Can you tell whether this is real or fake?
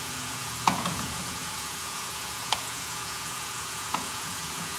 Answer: fake